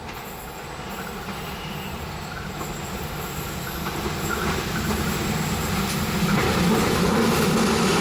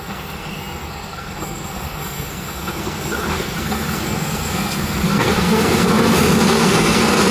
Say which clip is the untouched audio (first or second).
first